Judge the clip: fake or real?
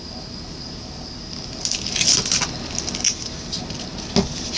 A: real